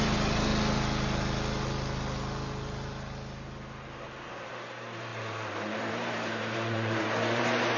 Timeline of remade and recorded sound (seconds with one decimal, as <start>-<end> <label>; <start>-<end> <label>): 0.0-0.5 remade; 0.5-4.5 recorded; 4.5-7.8 remade